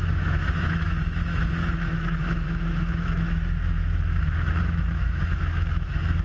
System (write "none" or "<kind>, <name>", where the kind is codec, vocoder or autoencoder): autoencoder, DAC-VAE